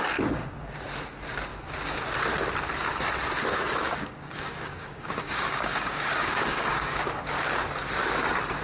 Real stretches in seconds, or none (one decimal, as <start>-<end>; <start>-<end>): 0.0-3.5; 7.0-8.6